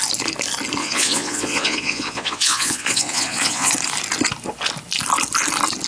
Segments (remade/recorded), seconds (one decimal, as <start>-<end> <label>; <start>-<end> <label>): 0.0-0.8 recorded; 0.8-3.7 remade; 3.7-5.9 recorded